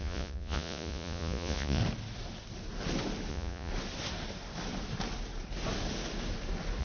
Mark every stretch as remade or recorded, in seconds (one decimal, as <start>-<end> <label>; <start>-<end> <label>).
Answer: 0.0-1.8 remade; 1.8-3.3 recorded; 3.3-3.7 remade; 3.7-6.8 recorded